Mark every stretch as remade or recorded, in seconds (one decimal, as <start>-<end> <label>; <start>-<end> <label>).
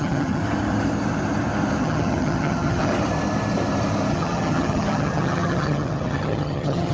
0.0-0.4 remade; 0.4-1.8 recorded; 1.8-2.9 remade; 2.9-4.1 recorded; 4.1-6.9 remade